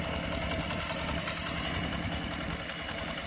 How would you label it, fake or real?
real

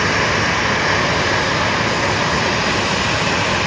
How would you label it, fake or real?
real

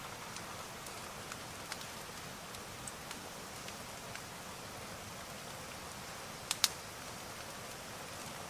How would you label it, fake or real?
real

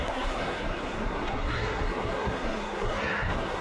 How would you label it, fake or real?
fake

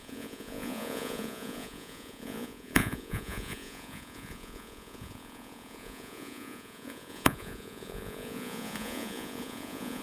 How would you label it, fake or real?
fake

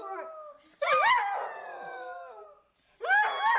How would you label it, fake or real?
real